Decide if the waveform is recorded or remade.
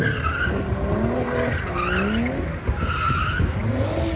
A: recorded